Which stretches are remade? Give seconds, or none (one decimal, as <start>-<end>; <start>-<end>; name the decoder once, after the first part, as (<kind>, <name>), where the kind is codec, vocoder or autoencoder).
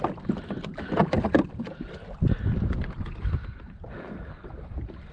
none